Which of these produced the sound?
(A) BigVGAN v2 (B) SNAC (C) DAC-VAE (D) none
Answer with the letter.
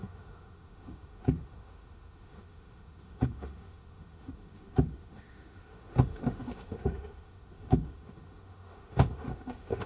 C